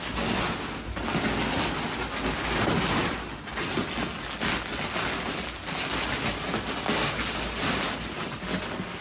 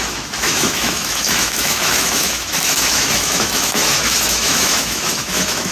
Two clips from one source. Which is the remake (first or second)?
second